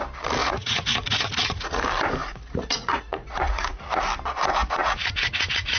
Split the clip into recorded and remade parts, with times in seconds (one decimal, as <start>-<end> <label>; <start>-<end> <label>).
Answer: 0.0-0.4 recorded; 0.4-1.8 remade; 1.8-2.2 recorded; 2.2-4.0 remade; 4.0-4.6 recorded; 4.6-5.8 remade